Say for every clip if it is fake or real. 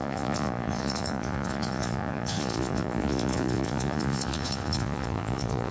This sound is fake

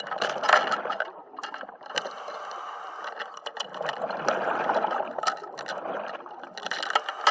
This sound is real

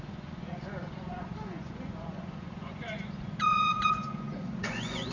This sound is fake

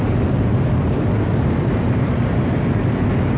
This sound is real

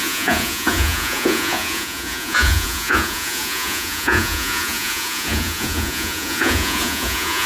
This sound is fake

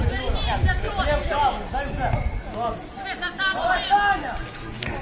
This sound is real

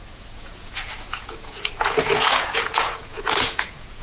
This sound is fake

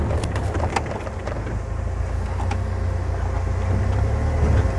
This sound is real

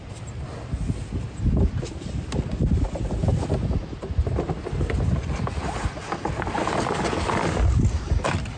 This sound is real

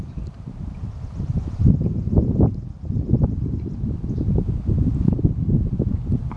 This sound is real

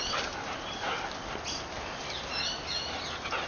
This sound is real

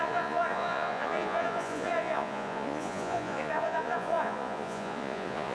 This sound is fake